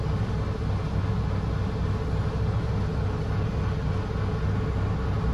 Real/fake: real